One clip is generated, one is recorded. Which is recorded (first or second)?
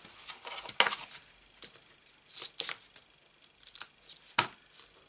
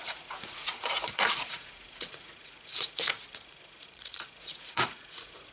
first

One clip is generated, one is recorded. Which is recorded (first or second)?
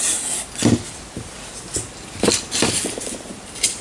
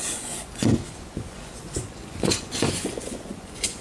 first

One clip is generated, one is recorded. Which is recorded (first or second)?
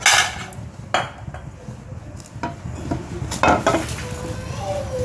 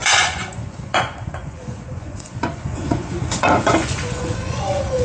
first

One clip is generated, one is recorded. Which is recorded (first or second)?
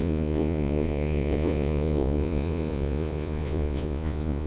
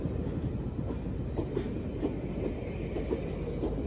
second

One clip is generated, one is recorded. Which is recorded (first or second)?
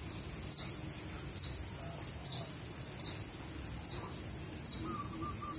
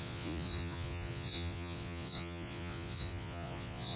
first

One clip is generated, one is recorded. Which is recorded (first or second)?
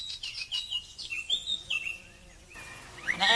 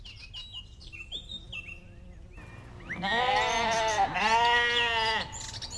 second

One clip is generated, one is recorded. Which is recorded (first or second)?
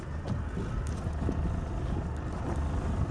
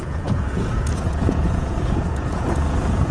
first